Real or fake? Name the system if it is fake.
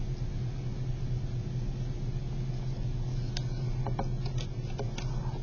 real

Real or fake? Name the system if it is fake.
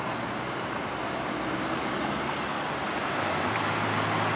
real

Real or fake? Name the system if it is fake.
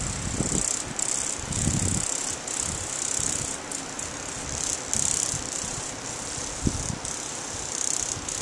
real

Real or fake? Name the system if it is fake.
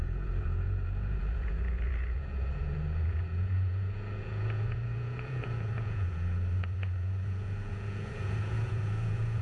fake, vocoder, Vocos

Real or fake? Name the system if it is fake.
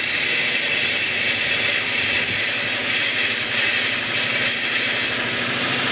real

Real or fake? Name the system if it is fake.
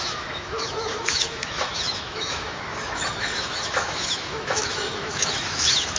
fake, autoencoder, DAC-VAE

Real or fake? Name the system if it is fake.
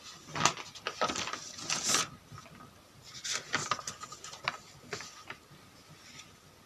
real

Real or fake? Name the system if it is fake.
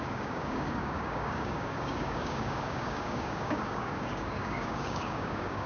fake, codec, DAC